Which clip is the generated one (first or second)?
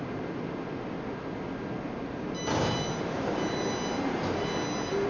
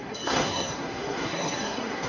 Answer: second